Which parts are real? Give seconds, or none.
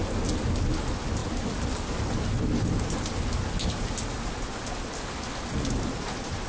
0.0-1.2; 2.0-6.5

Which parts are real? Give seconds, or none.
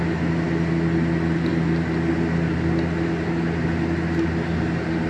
0.0-5.1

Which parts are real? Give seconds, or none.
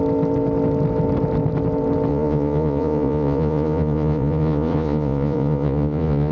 0.0-2.1